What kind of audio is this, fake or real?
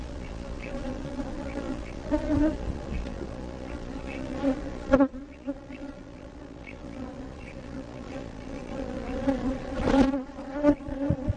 fake